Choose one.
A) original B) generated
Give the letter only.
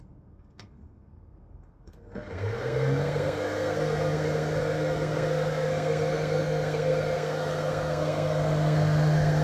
B